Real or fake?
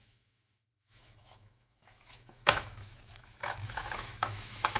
fake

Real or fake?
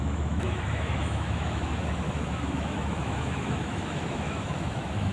fake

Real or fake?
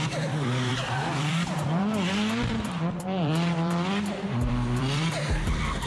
fake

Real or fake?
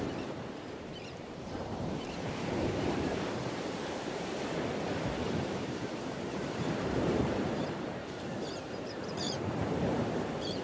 fake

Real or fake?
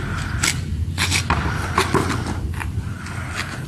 real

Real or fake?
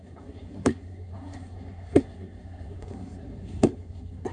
fake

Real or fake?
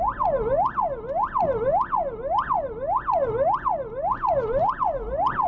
real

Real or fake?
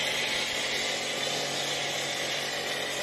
real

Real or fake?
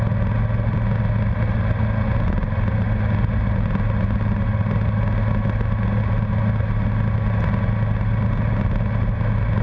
real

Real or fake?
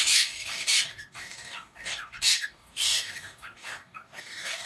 fake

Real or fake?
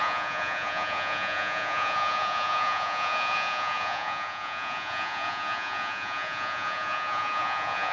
fake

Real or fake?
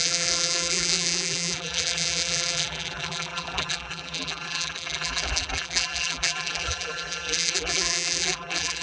fake